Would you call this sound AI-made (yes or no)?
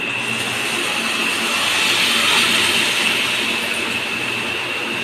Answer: no